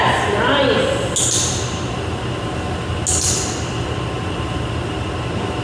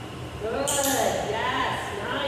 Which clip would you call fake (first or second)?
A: second